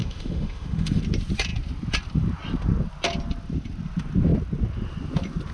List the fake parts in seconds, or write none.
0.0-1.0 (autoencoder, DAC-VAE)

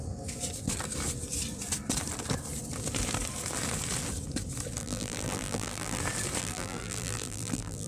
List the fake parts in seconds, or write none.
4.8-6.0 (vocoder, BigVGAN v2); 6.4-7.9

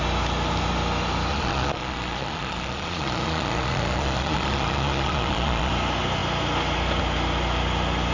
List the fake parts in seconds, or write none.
1.3-5.7 (vocoder, Vocos)